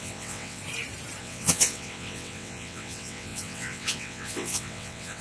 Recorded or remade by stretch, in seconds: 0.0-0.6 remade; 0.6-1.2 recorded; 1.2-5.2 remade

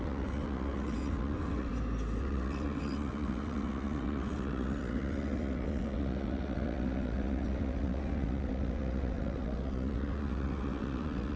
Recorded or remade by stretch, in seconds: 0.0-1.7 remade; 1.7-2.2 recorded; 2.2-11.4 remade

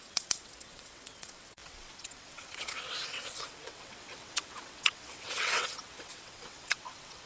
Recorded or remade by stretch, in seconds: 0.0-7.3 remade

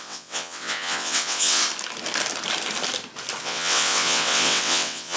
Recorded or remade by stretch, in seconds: 0.0-1.6 remade; 1.6-3.4 recorded; 3.4-5.2 remade